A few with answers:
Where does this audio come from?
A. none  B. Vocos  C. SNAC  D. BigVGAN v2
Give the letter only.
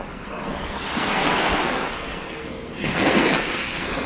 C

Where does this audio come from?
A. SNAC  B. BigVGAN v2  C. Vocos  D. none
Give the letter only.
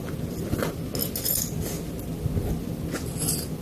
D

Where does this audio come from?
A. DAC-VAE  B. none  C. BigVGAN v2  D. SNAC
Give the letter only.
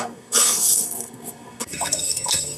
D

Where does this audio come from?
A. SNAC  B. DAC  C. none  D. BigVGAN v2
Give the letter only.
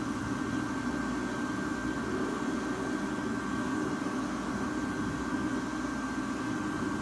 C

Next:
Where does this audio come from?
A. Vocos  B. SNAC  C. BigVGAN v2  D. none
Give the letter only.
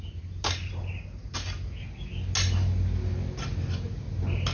D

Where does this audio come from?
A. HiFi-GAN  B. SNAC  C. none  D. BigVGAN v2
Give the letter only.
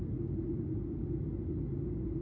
C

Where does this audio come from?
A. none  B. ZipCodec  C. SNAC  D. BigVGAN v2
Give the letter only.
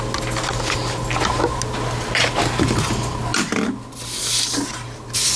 A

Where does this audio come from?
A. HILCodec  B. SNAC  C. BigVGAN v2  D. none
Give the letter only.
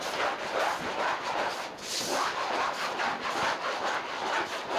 D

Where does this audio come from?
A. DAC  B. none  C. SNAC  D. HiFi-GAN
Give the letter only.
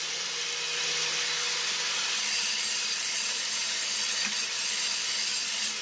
B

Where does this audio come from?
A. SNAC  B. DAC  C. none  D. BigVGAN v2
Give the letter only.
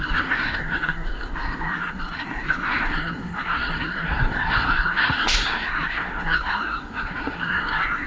A